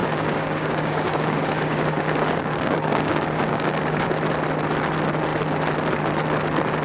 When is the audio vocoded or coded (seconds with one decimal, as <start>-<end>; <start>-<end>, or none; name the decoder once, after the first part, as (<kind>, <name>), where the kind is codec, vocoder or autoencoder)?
0.0-4.1 (codec, DAC)